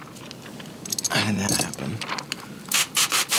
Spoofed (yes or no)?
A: no